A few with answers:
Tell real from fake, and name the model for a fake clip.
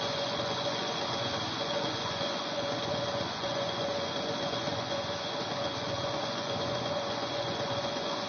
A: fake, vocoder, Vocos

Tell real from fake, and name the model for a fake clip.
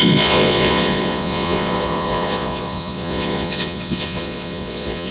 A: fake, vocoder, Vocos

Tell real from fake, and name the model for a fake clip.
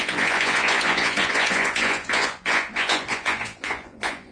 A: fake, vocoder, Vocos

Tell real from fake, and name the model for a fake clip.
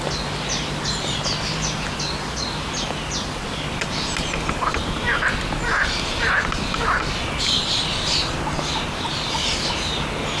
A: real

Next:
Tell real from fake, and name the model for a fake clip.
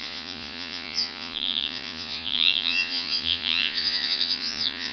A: fake, vocoder, Vocos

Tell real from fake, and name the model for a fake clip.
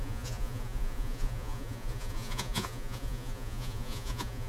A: fake, vocoder, Vocos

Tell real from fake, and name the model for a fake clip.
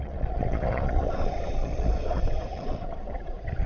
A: fake, vocoder, Vocos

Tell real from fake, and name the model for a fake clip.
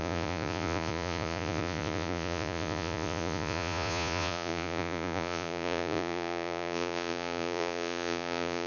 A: fake, vocoder, Vocos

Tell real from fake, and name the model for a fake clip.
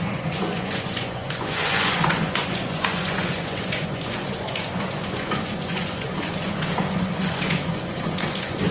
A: fake, vocoder, Vocos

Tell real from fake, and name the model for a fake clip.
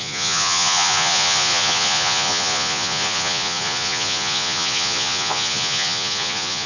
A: fake, vocoder, Vocos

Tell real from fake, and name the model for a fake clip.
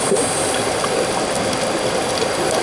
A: real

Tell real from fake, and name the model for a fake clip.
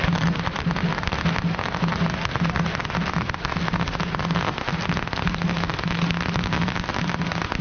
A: real